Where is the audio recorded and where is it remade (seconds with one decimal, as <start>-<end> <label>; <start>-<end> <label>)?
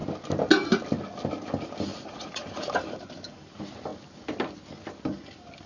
0.0-1.9 recorded; 1.9-2.6 remade; 2.6-5.7 recorded